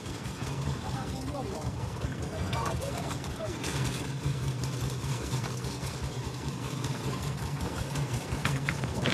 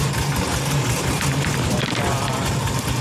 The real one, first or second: second